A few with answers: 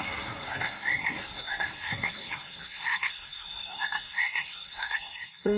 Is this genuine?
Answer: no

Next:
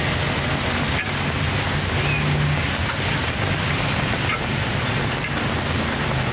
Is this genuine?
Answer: yes